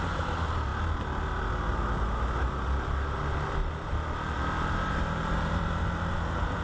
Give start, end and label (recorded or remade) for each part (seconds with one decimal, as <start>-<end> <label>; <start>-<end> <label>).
0.0-0.7 remade; 0.7-4.7 recorded; 4.7-6.6 remade